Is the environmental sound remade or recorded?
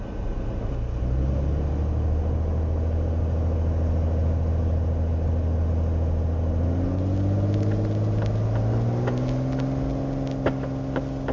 recorded